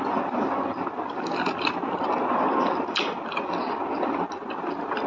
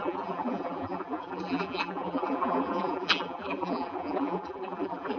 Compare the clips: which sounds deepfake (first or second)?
second